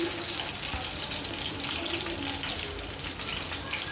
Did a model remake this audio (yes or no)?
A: no